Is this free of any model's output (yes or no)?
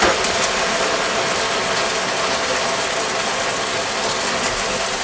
yes